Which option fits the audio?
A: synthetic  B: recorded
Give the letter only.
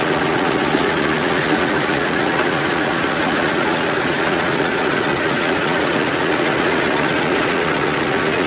A